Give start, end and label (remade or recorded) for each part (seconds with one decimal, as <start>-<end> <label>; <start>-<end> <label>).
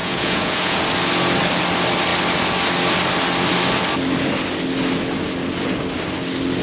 0.0-0.8 remade; 0.8-6.6 recorded